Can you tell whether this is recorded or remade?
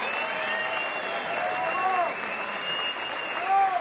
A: recorded